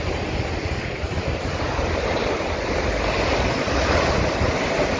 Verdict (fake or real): real